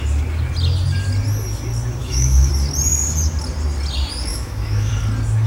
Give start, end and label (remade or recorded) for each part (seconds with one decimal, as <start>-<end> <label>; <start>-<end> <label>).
0.0-2.0 recorded; 2.0-2.5 remade; 2.5-4.3 recorded; 4.3-4.9 remade; 4.9-5.5 recorded